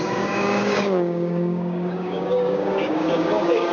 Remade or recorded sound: remade